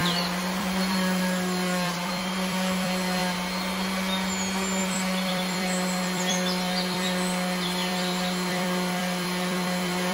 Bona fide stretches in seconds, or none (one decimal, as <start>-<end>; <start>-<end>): 3.2-4.8